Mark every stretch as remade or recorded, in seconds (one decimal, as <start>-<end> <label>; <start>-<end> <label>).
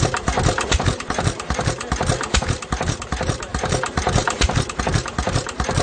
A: 0.0-5.8 remade